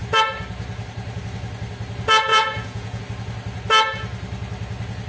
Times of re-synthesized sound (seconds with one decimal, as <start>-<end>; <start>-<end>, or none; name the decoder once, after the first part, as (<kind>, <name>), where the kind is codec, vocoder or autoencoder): 2.3-3.0 (vocoder, Vocos)